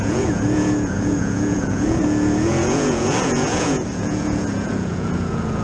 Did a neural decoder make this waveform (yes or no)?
yes